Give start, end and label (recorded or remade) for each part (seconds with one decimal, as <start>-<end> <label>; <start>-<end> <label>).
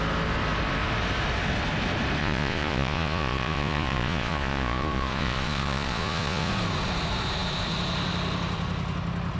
0.0-2.2 recorded; 2.2-6.5 remade; 6.5-9.4 recorded